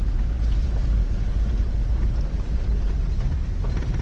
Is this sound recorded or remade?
remade